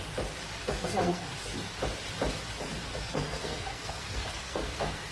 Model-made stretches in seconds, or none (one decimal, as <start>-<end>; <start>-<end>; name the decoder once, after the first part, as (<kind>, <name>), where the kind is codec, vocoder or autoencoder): 0.6-1.3 (codec, SNAC); 2.9-5.1